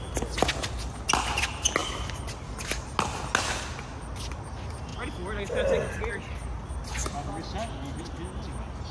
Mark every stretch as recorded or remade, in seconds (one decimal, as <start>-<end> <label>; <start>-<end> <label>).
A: 0.0-8.9 recorded